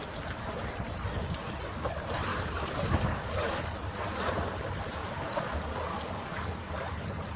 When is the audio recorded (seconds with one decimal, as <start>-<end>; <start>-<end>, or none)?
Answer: 0.0-2.3; 3.6-5.0; 5.5-5.9; 6.7-7.4